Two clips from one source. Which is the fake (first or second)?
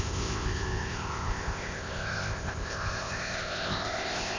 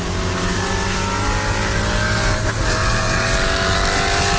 first